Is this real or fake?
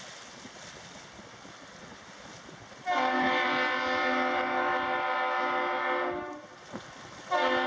real